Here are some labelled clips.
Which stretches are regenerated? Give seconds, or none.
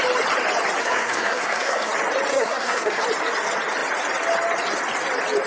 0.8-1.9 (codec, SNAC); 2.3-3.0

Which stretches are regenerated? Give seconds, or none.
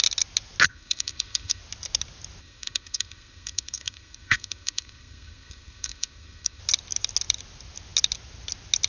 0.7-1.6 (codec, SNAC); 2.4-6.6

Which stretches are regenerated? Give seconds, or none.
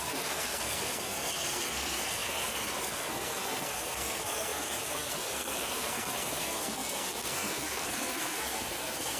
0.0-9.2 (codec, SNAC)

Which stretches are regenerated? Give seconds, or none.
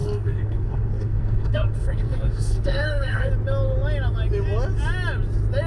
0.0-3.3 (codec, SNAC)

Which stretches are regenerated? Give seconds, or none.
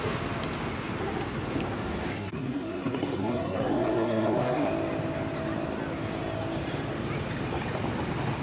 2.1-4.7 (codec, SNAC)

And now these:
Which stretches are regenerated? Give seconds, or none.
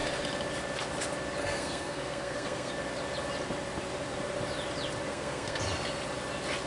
1.4-2.7 (codec, SNAC); 5.1-5.6